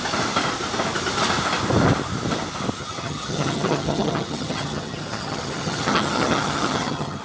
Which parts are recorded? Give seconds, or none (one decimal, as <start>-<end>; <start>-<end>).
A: 0.0-2.8